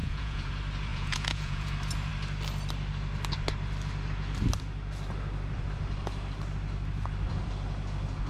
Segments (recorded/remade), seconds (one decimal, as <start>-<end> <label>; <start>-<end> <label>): 0.0-0.5 remade; 0.5-0.9 recorded; 0.9-1.7 remade; 1.7-8.3 recorded